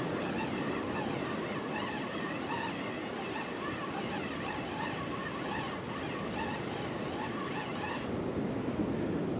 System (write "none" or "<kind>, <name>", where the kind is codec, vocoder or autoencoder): vocoder, BigVGAN v2